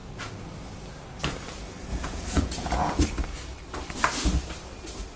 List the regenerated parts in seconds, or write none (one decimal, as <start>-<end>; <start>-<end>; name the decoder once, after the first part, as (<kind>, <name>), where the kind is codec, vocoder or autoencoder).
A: 1.9-3.0 (vocoder, Vocos)